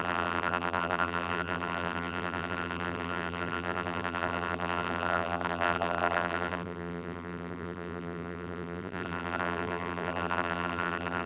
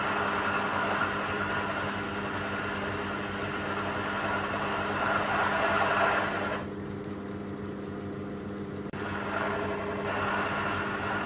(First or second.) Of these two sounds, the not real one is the first